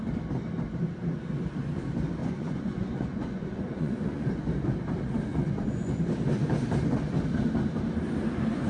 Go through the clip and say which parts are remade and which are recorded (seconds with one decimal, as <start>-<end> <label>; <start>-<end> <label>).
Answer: 0.0-2.2 recorded; 2.2-4.5 remade; 4.5-5.3 recorded; 5.3-6.0 remade; 6.0-8.7 recorded